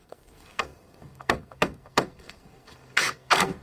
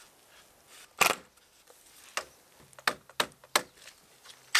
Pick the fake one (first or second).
first